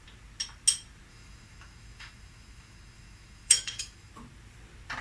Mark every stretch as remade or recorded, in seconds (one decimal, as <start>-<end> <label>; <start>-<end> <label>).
0.0-1.1 recorded; 1.1-4.1 remade; 4.1-5.0 recorded